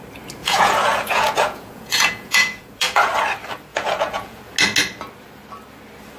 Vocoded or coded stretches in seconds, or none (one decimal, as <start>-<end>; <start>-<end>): 0.4-3.1; 3.7-4.4